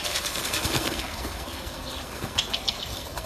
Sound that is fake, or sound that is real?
fake